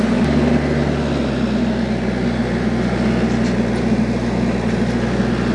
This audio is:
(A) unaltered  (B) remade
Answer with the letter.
A